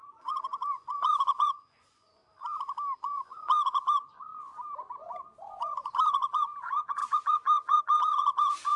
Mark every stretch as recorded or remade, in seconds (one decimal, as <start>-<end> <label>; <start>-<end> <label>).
0.0-2.2 remade; 2.2-3.0 recorded; 3.0-4.3 remade; 4.3-5.6 recorded; 5.6-8.8 remade